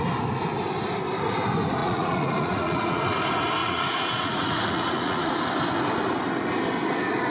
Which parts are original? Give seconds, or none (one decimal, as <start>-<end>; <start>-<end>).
0.0-1.8; 3.0-3.6; 5.3-7.3